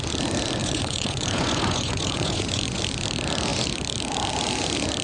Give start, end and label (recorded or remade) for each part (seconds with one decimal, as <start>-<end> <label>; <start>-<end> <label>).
0.0-0.6 recorded; 0.6-2.8 remade; 2.8-5.0 recorded